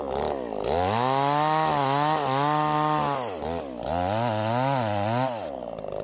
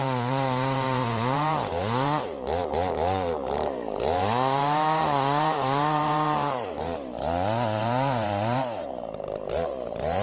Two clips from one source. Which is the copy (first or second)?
second